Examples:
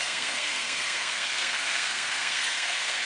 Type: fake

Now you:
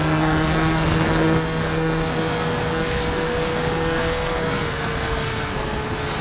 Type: fake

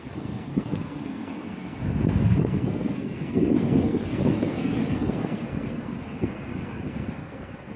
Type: fake